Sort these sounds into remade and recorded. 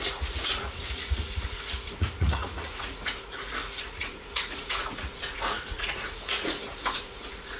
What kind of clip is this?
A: remade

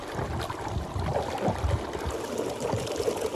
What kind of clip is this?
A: recorded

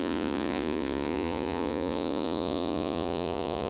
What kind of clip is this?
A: remade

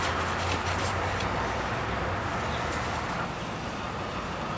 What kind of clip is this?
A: recorded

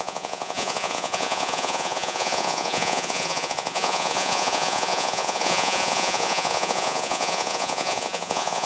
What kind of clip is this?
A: remade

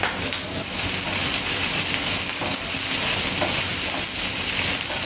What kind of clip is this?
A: recorded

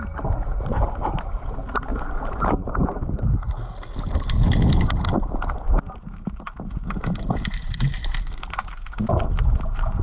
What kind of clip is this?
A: recorded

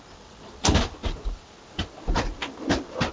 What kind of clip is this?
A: recorded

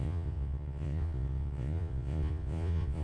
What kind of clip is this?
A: remade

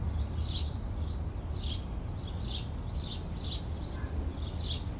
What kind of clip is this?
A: recorded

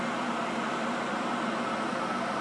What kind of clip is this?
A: recorded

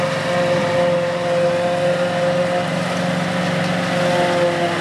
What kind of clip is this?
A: recorded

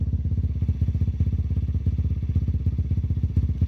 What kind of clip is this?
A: recorded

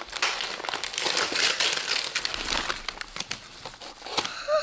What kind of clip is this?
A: recorded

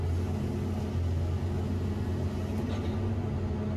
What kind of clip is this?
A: recorded